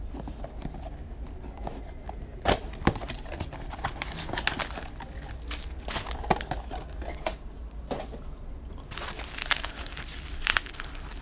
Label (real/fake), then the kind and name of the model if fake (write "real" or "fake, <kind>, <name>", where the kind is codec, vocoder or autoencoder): real